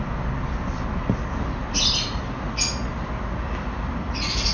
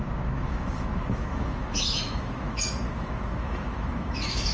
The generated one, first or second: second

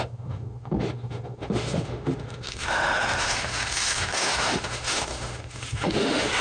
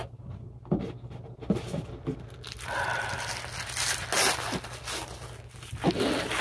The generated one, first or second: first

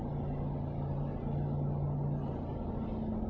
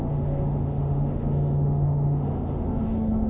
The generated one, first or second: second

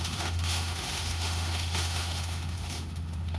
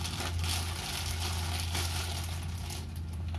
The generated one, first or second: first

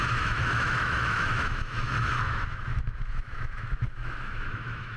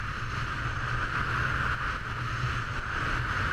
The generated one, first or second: first